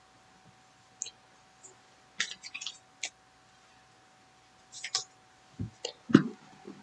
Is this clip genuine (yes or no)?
yes